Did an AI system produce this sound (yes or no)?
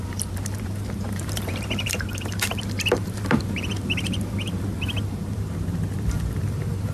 yes